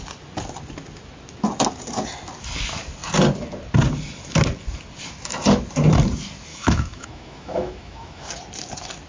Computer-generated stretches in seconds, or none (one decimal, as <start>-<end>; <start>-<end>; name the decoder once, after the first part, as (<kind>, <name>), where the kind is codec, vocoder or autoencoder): 6.5-8.3 (autoencoder, DAC-VAE)